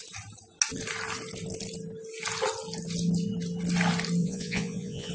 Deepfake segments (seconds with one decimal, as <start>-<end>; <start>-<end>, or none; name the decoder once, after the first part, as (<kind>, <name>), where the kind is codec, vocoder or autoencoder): 4.2-5.1 (vocoder, Vocos)